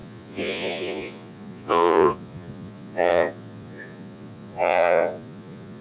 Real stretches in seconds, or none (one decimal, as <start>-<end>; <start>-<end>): none